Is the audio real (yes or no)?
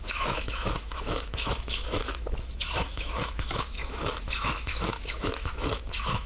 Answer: no